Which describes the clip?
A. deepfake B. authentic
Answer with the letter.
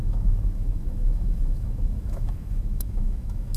A